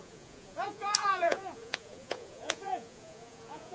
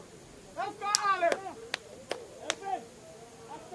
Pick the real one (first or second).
second